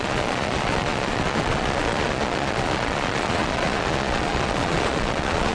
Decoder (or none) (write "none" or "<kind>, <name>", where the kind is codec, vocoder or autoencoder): vocoder, Vocos